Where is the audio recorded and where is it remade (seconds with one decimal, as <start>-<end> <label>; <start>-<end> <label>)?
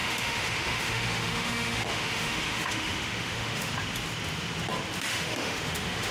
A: 0.0-3.7 remade; 3.7-5.1 recorded; 5.1-6.1 remade